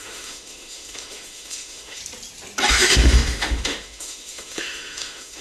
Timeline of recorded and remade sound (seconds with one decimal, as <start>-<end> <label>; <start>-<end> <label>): 0.0-2.0 remade; 2.0-2.7 recorded; 2.7-5.4 remade